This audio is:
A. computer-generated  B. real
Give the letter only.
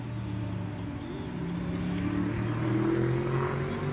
B